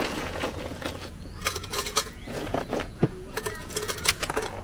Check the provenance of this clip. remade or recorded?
remade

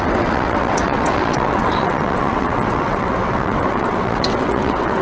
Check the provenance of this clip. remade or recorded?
remade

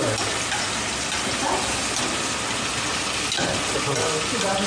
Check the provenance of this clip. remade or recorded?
recorded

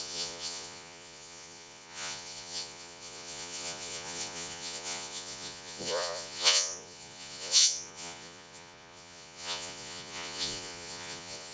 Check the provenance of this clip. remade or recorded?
remade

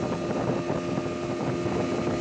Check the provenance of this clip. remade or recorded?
recorded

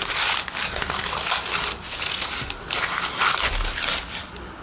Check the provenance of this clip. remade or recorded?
recorded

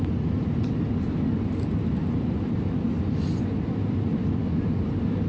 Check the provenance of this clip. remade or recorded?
recorded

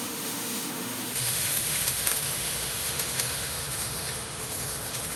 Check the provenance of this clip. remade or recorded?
remade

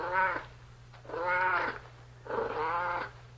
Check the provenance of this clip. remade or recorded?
recorded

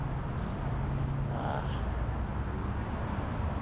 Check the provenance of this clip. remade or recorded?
recorded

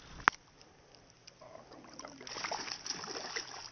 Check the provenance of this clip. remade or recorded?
recorded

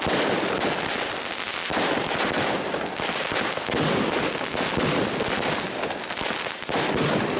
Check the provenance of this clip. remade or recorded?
recorded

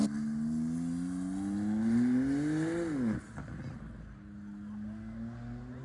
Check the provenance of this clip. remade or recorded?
recorded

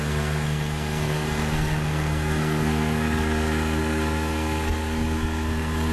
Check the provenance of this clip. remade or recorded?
remade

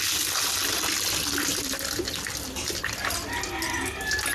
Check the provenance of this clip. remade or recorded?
recorded